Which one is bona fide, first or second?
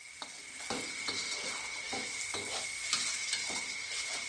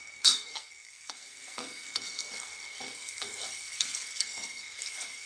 first